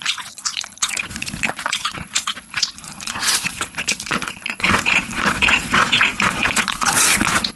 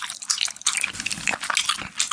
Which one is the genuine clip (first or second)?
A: second